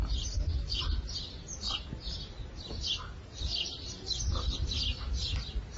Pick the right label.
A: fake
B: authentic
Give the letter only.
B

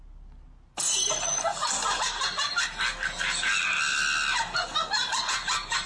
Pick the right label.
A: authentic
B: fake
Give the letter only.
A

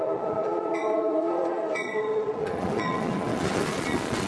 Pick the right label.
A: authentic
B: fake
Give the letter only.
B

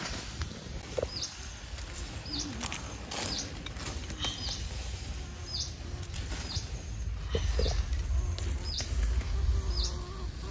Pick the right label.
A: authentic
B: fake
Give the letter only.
A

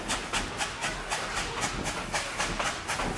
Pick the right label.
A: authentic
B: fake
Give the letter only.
A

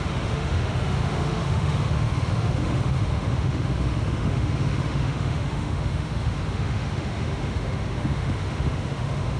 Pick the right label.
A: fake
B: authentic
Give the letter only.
A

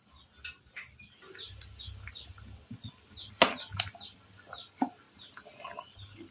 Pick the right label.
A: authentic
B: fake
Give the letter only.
A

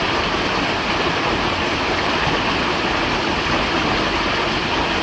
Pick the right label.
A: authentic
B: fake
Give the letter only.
A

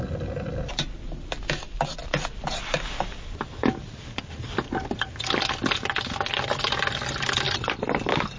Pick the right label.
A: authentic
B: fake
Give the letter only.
A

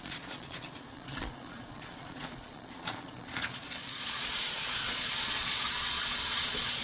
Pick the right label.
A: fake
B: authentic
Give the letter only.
A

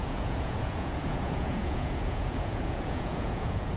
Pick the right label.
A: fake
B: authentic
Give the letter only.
A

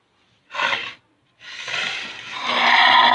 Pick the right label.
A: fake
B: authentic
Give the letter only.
B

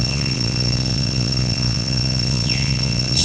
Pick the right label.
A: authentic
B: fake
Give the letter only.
B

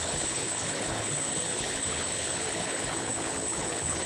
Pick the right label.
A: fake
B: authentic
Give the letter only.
A